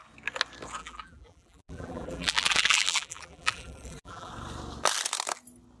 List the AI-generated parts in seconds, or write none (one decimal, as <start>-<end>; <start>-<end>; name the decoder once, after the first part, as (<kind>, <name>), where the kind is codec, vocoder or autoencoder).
0.8-4.3 (vocoder, BigVGAN v2)